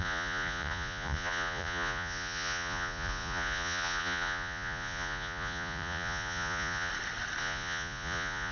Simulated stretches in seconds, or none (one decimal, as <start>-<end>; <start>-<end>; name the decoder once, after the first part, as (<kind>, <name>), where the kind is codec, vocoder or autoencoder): 0.0-6.9 (vocoder, Vocos); 7.4-8.5

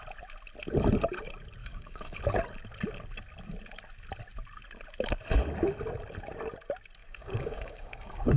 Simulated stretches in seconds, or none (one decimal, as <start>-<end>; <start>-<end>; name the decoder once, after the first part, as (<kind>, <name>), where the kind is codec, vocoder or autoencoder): 1.6-2.2 (codec, DAC); 7.0-8.4

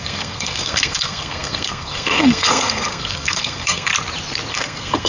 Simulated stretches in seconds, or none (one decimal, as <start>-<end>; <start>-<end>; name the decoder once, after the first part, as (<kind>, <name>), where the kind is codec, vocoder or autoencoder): 0.0-3.9 (codec, SNAC); 4.5-5.1

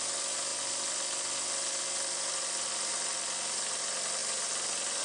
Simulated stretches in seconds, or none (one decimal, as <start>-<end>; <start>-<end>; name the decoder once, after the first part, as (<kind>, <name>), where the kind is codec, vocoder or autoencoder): none

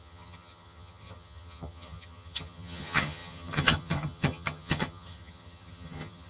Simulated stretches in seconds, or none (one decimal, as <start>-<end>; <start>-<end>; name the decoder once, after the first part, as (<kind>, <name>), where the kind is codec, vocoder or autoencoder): 0.0-6.3 (vocoder, HiFi-GAN)